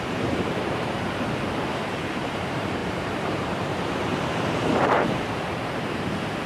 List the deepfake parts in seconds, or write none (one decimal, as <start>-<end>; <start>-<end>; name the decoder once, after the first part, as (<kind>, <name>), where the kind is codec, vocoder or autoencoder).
0.0-6.5 (vocoder, BigVGAN v2)